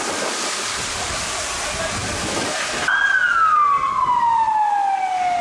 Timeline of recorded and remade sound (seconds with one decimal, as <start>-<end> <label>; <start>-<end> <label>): 0.0-5.4 recorded